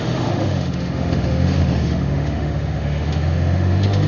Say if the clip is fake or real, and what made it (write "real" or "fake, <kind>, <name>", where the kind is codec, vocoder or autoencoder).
fake, autoencoder, DAC-VAE